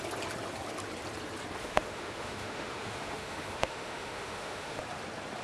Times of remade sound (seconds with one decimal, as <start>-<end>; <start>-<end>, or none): 1.6-4.8